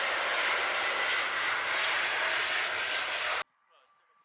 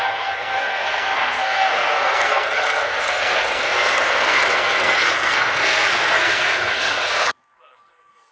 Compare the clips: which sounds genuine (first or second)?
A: first